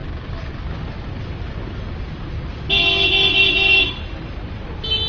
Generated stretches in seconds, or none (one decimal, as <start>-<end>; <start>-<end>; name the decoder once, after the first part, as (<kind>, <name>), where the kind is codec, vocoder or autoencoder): 3.7-4.3 (vocoder, BigVGAN v2)